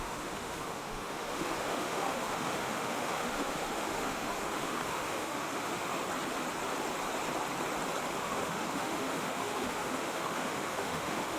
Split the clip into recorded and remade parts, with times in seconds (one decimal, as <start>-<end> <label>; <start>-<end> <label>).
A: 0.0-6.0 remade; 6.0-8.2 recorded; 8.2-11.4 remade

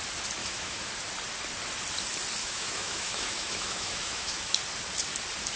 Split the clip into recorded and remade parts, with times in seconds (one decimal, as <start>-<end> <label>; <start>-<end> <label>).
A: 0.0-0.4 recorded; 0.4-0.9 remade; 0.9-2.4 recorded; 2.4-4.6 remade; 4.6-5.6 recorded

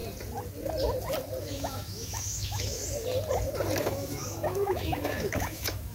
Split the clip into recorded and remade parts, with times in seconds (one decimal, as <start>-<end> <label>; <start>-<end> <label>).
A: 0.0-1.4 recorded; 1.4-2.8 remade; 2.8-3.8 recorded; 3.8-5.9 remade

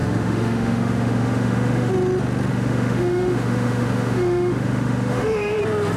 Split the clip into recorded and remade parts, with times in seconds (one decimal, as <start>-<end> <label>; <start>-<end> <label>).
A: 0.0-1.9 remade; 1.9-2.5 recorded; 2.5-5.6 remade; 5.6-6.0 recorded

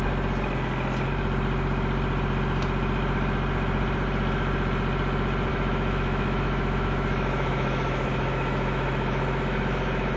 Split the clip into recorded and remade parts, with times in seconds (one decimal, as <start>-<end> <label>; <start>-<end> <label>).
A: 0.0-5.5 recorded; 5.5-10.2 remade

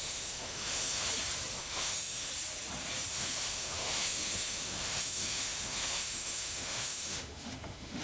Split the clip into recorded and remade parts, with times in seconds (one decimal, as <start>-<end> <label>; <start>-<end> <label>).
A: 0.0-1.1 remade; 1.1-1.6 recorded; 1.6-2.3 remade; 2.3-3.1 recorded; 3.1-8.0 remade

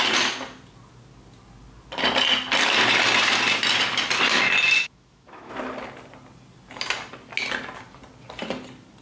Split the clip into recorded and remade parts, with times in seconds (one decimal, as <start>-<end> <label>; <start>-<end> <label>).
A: 0.0-4.8 recorded; 4.8-5.5 remade; 5.5-9.0 recorded

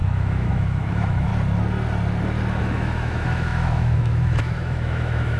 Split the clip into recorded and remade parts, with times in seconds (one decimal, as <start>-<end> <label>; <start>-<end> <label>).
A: 0.0-1.3 remade; 1.3-2.6 recorded; 2.6-5.4 remade